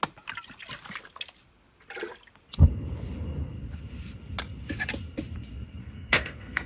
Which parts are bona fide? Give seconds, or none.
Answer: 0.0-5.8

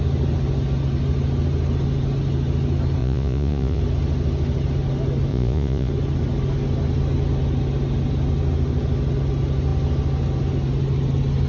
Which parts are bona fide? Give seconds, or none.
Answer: 0.0-3.0; 3.8-5.3; 5.9-11.5

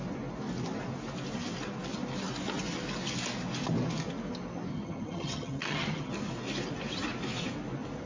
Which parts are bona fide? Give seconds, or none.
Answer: 0.0-4.7; 6.1-8.1

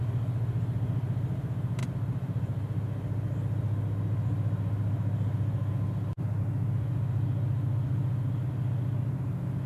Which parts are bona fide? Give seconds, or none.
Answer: 0.0-9.7

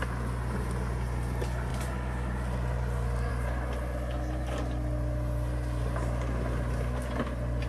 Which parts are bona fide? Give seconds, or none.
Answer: 0.0-7.7